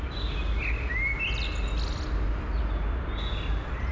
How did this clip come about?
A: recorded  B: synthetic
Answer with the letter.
A